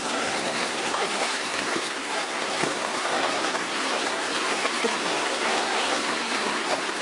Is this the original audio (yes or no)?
no